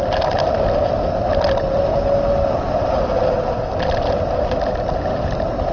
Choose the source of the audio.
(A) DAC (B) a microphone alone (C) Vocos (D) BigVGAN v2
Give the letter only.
B